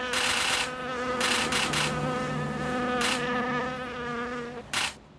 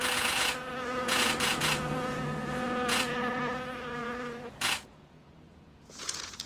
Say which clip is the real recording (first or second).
first